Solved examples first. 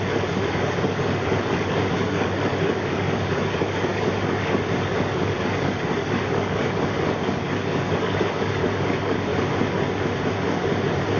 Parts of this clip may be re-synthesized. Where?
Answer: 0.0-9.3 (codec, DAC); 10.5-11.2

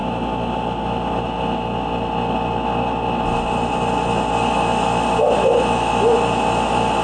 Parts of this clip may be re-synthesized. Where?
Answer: none